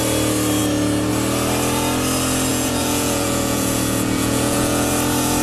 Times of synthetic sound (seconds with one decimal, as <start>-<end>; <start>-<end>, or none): 2.5-4.9